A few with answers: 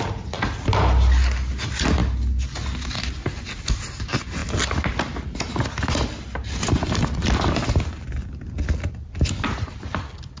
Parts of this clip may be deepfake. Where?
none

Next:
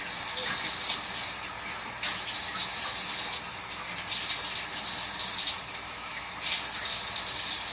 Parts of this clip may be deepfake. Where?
5.4-6.3 (autoencoder, DAC-VAE)